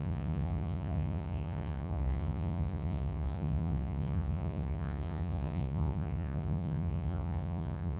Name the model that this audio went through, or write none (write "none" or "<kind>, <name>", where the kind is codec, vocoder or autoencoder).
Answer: vocoder, Vocos